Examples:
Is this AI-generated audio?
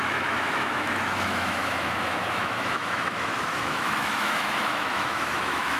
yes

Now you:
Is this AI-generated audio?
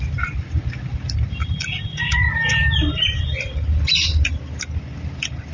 yes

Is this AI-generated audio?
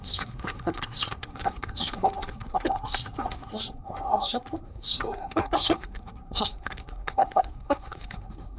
yes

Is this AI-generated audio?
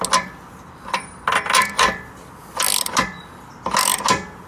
no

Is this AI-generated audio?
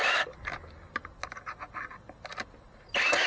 no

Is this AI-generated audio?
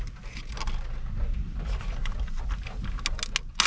no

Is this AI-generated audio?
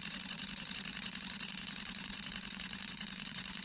yes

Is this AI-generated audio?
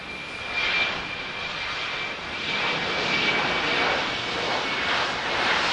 no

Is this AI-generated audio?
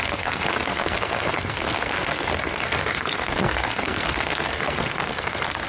yes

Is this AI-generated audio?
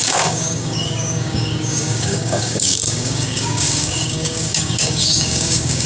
yes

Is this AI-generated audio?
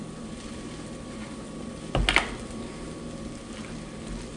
no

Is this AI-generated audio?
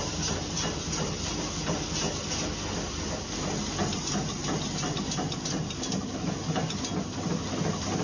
no